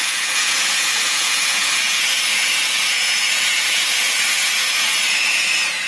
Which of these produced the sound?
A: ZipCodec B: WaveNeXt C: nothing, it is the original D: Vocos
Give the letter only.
D